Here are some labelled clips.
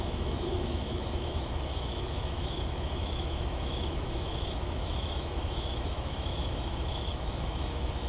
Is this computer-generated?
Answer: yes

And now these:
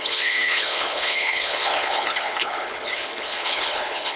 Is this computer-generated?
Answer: yes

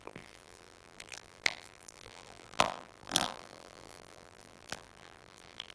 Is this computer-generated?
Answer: yes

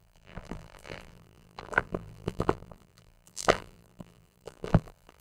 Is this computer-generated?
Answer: yes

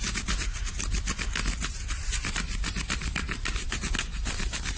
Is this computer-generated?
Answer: no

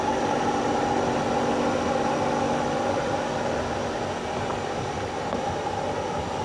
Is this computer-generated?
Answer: no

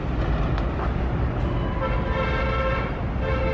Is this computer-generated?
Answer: no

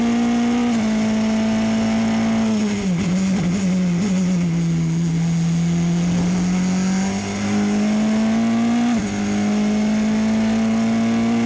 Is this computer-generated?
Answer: no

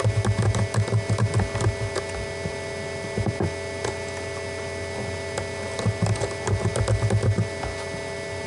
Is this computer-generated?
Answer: no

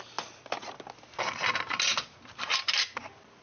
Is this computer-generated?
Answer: no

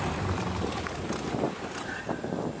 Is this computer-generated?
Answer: no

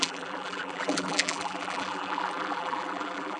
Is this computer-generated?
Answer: yes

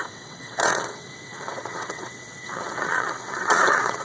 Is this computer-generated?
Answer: yes